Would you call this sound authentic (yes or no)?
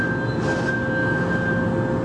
yes